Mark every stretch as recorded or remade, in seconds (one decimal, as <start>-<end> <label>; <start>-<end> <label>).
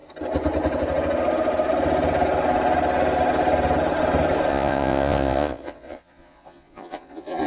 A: 0.0-4.5 recorded; 4.5-7.5 remade